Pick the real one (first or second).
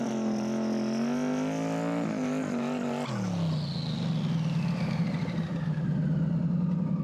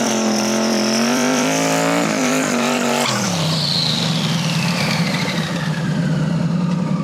first